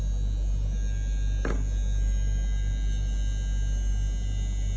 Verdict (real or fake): real